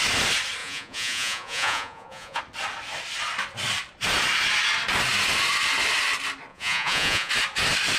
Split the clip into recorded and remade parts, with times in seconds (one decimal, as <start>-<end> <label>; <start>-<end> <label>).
0.0-0.6 recorded; 0.6-2.4 remade; 2.4-6.5 recorded; 6.5-7.3 remade; 7.3-8.0 recorded